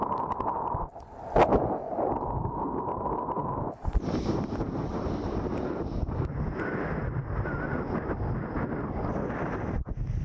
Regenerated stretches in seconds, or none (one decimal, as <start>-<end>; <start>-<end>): none